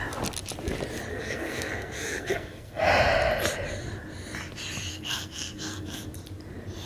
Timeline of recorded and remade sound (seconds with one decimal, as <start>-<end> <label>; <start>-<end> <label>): 0.0-1.1 recorded; 1.1-2.9 remade; 2.9-4.9 recorded; 4.9-6.0 remade; 6.0-6.9 recorded

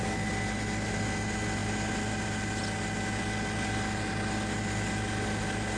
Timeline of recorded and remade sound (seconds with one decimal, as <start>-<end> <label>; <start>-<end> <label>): 0.0-5.8 recorded

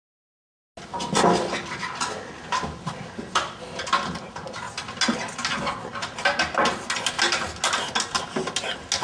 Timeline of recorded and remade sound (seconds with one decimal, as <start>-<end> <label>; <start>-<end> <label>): 0.0-9.0 recorded